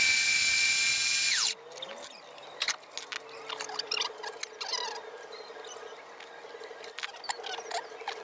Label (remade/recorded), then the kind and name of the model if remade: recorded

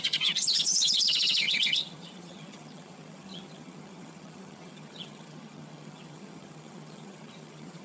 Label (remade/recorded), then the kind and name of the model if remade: remade, vocoder, HiFi-GAN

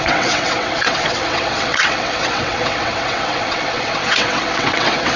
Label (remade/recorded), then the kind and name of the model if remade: remade, vocoder, WaveNeXt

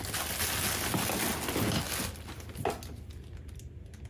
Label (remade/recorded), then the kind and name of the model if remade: recorded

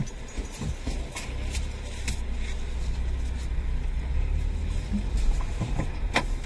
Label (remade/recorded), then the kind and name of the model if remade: recorded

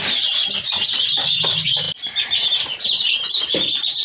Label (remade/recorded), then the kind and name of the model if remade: recorded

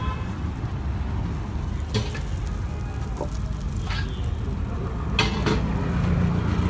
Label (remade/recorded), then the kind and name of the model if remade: recorded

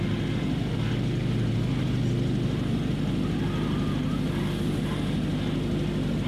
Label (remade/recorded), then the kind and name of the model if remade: recorded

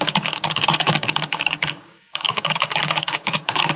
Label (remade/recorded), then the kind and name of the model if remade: remade, codec, DAC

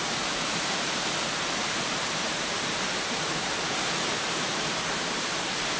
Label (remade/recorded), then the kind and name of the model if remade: remade, vocoder, BigVGAN v2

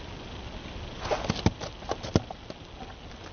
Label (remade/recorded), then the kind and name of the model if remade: recorded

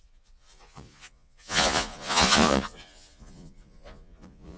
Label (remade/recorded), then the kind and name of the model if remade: remade, vocoder, Vocos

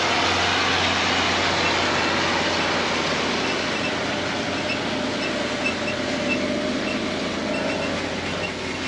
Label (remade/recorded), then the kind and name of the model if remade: recorded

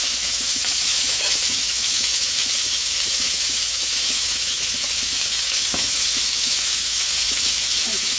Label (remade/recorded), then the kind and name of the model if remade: remade, autoencoder, DAC-VAE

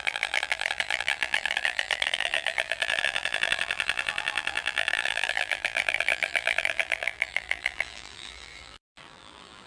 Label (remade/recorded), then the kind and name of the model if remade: remade, vocoder, BigVGAN v2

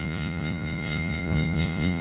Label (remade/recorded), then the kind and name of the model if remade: remade, vocoder, Vocos